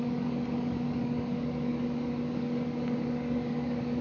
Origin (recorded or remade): remade